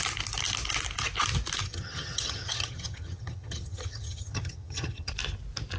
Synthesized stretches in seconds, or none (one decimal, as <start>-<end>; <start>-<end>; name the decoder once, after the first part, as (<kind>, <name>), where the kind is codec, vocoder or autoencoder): 1.6-5.1 (vocoder, HiFi-GAN)